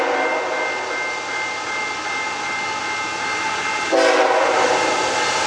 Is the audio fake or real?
real